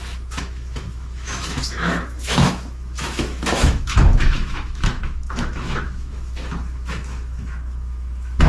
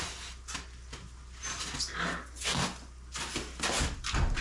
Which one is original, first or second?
second